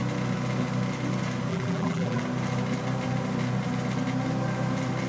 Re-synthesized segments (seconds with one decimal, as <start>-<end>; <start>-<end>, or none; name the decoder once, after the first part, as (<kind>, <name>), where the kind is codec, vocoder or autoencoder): 1.5-2.2 (vocoder, BigVGAN v2)